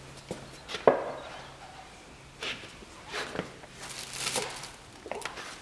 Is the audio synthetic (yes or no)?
no